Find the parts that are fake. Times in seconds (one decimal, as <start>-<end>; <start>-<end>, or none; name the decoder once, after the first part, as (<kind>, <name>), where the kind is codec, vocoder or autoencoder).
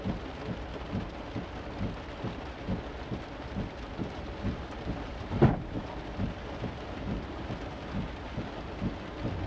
4.0-5.8 (vocoder, BigVGAN v2)